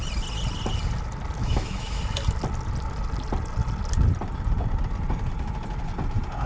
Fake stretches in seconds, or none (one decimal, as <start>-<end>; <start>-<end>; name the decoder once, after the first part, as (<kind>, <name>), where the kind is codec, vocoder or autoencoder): 1.4-2.0 (autoencoder, DAC-VAE)